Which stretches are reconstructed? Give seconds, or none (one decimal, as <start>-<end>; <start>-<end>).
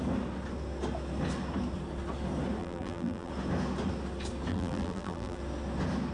2.6-3.3; 4.5-5.4